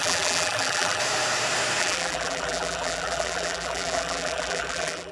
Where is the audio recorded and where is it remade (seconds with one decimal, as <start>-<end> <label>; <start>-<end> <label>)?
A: 0.0-1.0 remade; 1.0-1.8 recorded; 1.8-5.1 remade